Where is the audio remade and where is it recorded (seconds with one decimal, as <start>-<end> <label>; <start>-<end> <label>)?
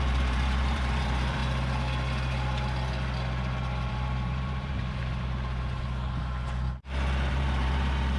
0.0-1.4 remade; 1.4-3.9 recorded; 3.9-5.0 remade; 5.0-7.3 recorded; 7.3-8.2 remade